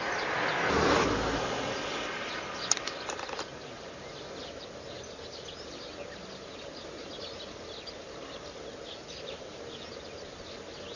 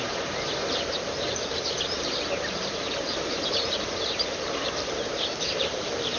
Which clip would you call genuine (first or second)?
first